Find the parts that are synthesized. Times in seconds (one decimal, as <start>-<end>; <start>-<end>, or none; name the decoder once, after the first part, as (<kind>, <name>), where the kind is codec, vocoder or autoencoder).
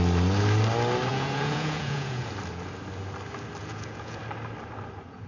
1.1-2.3 (vocoder, Vocos); 3.6-4.2